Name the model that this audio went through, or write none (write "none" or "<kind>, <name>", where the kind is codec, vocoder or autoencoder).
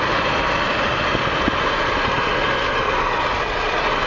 none